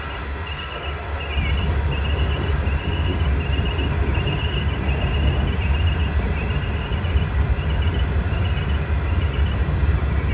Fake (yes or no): no